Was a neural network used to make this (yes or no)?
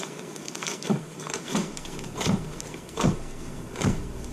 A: yes